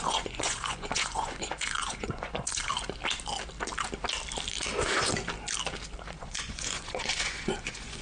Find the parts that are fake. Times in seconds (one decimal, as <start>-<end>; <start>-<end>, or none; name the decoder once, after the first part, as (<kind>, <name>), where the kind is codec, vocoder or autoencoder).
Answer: 0.0-2.7 (vocoder, Vocos); 6.1-8.0